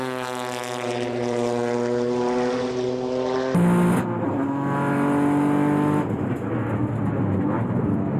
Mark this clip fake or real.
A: real